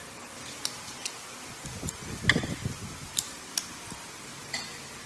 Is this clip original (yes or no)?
yes